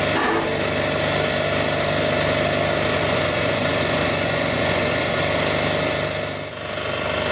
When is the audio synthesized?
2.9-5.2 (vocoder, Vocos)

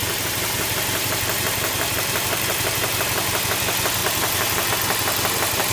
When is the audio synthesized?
0.0-3.4 (vocoder, BigVGAN v2); 4.0-4.7